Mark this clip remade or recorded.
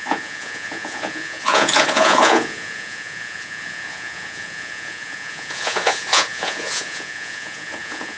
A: remade